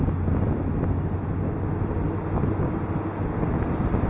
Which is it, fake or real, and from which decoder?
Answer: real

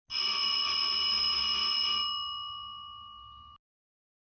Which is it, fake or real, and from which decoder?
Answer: real